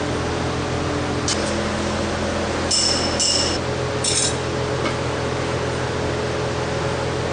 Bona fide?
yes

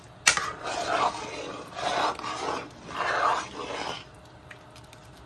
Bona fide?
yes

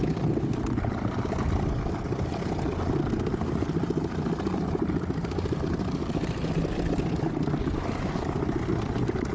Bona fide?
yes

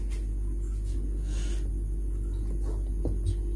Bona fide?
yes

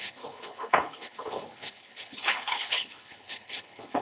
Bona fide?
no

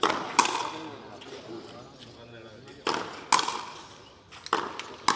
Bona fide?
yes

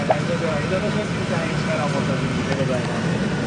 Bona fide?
yes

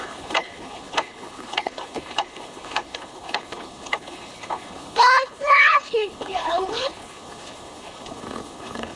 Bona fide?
no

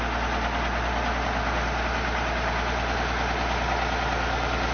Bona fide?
yes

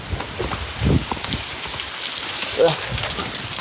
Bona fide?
yes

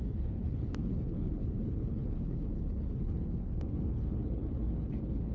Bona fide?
no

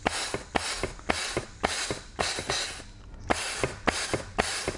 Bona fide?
yes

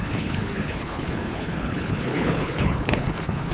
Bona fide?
no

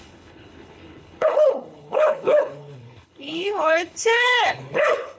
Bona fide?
no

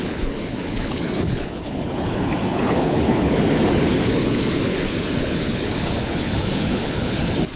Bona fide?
no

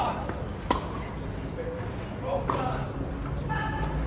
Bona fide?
yes